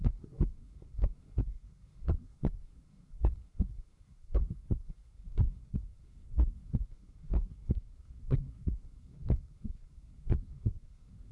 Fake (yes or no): yes